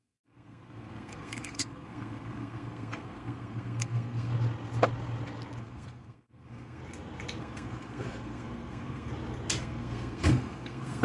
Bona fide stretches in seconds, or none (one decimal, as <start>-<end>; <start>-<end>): 4.3-5.6; 6.8-7.4; 9.1-9.6